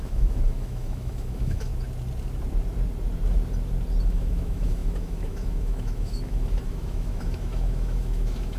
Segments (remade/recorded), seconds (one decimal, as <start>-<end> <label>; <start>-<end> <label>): 0.0-1.7 remade; 1.7-4.0 recorded; 4.0-8.6 remade